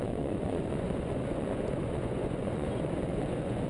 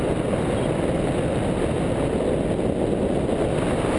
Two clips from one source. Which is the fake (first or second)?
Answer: first